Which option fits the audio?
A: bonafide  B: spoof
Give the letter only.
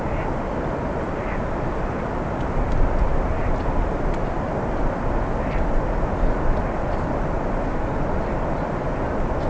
A